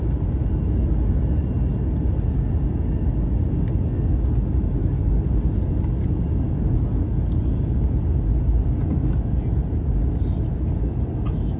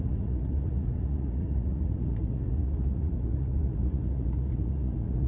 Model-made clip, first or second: second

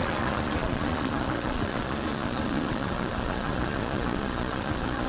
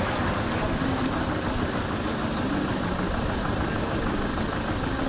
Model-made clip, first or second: first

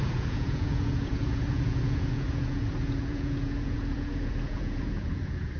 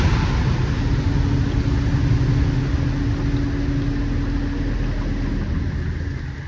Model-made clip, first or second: first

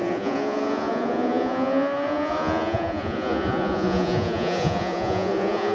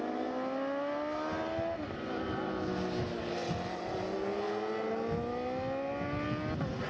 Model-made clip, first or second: first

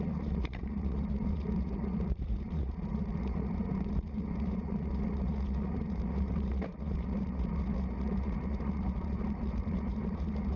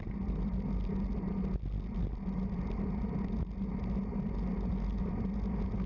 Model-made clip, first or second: first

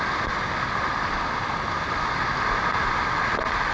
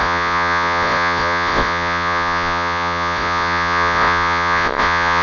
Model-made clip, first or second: second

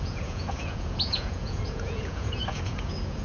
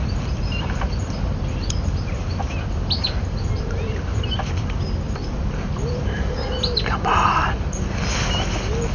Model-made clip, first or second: first